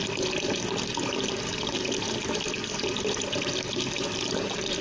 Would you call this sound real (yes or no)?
yes